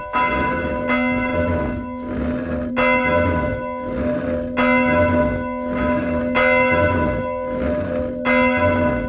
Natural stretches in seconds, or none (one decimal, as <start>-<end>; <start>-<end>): 0.0-9.1